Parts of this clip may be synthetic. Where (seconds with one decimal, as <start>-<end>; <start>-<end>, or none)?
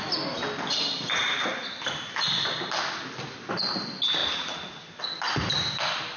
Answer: none